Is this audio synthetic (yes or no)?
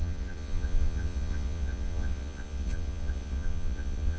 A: yes